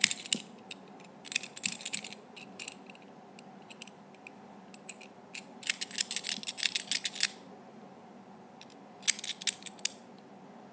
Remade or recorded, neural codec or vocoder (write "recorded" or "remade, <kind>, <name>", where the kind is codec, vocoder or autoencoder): recorded